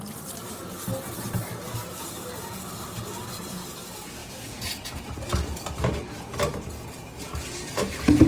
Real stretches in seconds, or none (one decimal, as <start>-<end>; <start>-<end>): 0.0-4.2; 5.0-8.3